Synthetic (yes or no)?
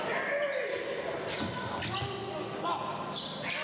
no